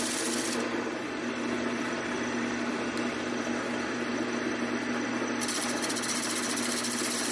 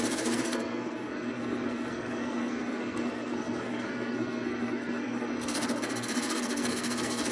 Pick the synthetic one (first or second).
second